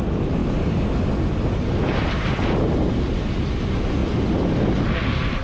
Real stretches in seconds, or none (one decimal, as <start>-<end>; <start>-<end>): 0.0-5.4